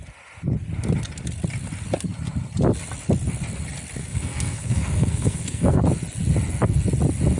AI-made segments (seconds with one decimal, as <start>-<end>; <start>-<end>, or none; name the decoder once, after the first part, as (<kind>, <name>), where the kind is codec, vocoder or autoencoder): 4.0-5.8 (codec, SNAC)